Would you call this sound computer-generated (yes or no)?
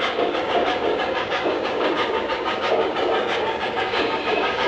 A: yes